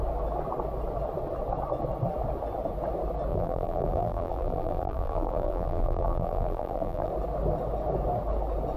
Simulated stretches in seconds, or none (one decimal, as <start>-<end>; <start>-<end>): 3.3-7.1